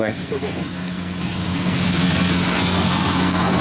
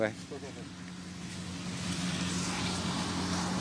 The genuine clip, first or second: second